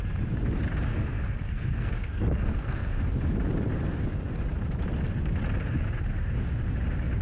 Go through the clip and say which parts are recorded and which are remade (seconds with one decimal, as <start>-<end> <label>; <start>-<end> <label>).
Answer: 0.0-0.9 recorded; 0.9-3.0 remade; 3.0-7.2 recorded